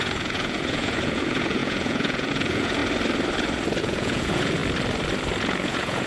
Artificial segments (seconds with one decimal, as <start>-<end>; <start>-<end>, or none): 0.0-2.8; 3.8-4.6; 5.4-6.1